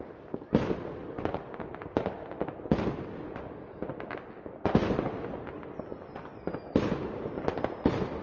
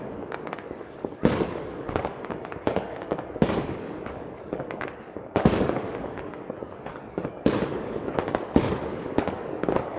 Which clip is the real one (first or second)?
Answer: first